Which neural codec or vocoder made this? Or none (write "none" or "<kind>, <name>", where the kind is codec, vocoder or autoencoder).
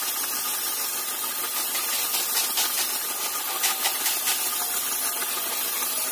none